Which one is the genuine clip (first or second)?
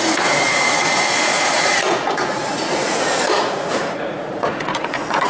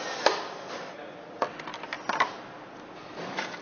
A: second